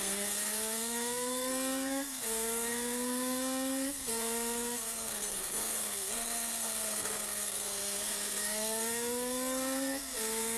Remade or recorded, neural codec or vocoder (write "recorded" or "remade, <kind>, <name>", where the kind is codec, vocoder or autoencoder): remade, codec, SNAC